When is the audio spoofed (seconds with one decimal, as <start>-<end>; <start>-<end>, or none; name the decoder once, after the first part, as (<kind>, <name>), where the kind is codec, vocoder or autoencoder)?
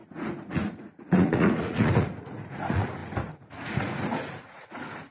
0.0-5.1 (vocoder, Vocos)